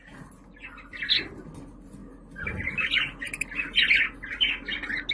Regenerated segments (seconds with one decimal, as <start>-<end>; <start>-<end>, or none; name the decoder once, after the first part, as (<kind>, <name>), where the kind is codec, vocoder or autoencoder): none